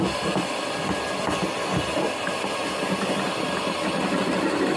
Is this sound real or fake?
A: real